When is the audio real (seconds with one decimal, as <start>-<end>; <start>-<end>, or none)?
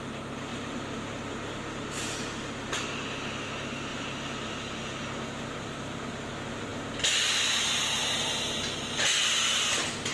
0.0-3.9; 5.0-10.1